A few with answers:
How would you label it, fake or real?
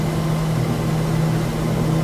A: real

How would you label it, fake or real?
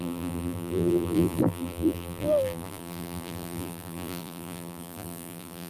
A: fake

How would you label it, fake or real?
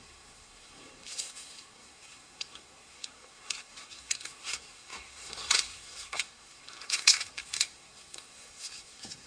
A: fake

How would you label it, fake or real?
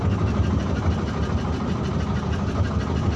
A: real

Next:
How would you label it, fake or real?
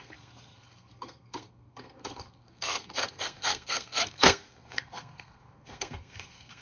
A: fake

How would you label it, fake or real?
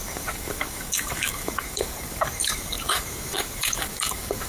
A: fake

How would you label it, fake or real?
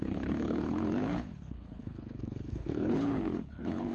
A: fake